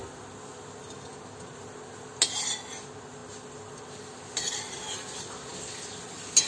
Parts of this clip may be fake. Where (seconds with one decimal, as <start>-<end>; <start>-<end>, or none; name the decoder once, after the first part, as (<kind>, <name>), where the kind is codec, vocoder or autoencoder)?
none

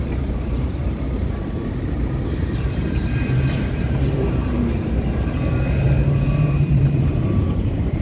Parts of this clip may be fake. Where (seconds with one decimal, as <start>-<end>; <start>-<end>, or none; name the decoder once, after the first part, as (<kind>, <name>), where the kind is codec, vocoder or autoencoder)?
0.0-0.8 (vocoder, BigVGAN v2); 2.3-8.0